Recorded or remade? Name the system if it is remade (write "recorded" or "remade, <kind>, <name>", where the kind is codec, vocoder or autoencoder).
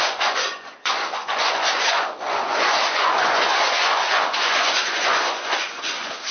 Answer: remade, vocoder, Vocos